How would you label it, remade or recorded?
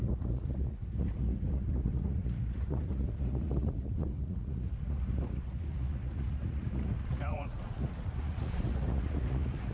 remade